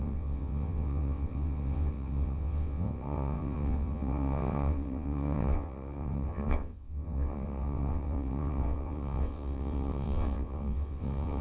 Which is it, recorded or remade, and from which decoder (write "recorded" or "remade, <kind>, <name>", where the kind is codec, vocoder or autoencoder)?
remade, vocoder, WaveNeXt